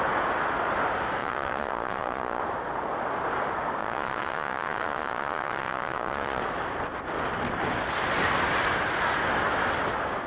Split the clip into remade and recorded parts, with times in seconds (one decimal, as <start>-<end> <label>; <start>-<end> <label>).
0.0-1.2 recorded; 1.2-2.4 remade; 2.4-3.8 recorded; 3.8-6.4 remade; 6.4-10.3 recorded